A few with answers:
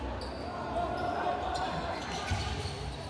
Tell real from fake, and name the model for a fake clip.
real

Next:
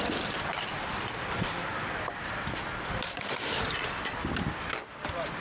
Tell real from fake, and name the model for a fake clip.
real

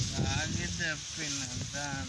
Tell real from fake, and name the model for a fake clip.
real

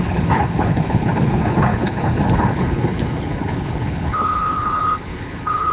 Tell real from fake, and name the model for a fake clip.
fake, codec, HILCodec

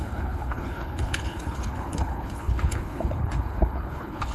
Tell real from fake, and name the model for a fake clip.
fake, codec, HILCodec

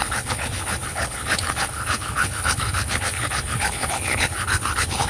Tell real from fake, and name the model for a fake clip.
fake, codec, HILCodec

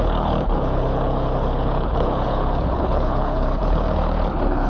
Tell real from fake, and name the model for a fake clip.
fake, codec, HILCodec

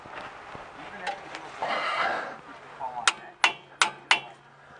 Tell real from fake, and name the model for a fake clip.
real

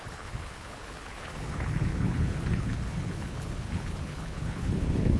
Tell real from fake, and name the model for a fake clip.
fake, codec, HILCodec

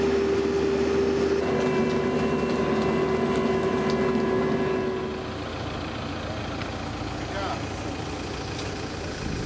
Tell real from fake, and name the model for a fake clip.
real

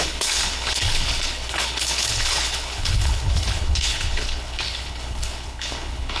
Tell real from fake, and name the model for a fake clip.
fake, codec, HILCodec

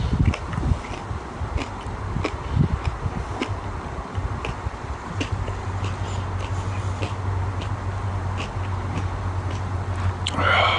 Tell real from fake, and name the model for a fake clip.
real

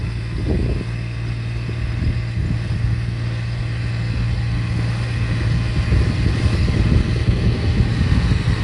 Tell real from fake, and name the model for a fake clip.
real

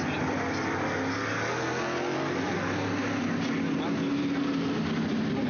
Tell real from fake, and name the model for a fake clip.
real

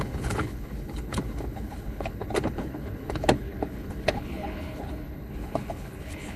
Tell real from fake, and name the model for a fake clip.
fake, codec, HILCodec